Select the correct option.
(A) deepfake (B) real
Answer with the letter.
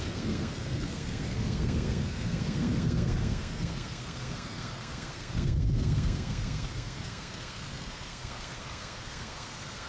A